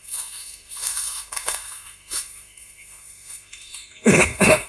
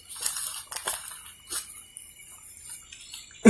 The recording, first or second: second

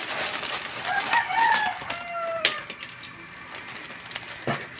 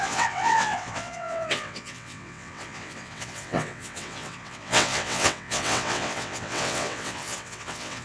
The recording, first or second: first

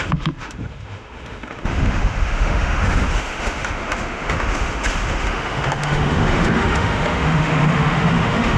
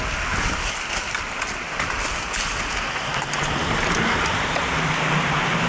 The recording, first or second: second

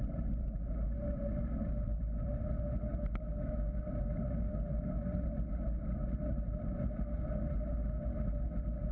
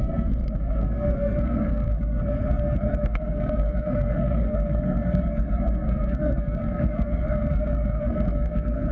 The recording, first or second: first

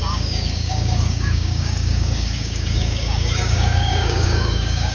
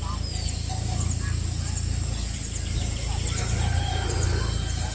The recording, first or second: second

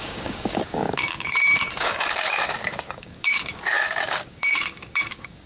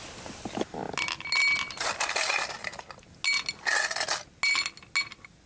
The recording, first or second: second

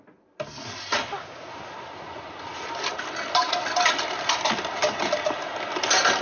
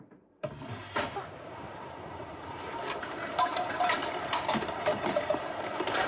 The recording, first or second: first